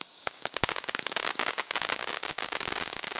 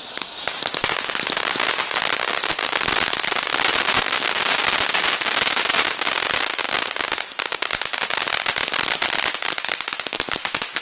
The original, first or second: second